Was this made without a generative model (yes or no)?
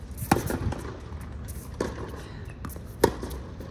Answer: yes